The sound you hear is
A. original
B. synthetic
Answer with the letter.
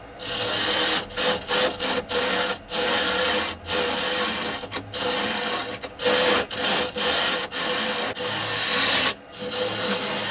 A